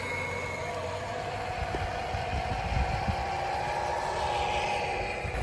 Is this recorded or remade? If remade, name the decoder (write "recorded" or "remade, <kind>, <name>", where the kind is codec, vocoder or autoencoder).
recorded